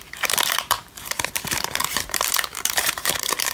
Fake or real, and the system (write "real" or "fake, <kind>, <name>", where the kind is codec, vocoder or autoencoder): fake, vocoder, BigVGAN v2